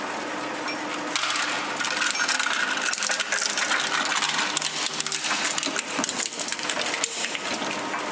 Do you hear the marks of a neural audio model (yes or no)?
no